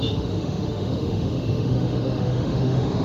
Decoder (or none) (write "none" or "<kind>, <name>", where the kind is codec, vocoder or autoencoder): autoencoder, DAC-VAE